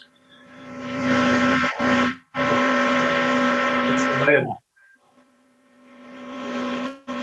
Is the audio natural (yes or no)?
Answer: no